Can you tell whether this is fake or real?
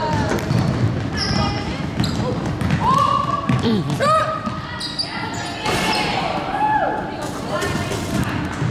fake